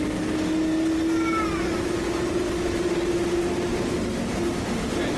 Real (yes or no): yes